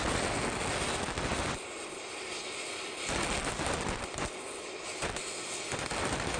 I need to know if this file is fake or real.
real